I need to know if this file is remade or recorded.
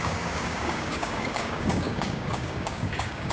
remade